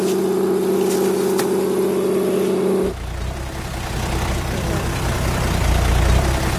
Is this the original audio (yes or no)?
yes